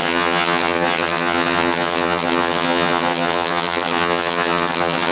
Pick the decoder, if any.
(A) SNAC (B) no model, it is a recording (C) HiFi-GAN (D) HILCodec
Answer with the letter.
C